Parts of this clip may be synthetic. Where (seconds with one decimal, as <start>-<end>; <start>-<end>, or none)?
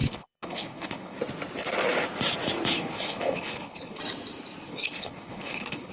0.0-1.2; 2.7-4.0; 4.7-5.9